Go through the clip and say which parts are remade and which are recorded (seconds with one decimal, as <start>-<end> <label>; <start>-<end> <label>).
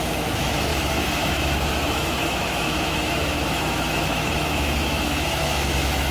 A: 0.0-6.1 remade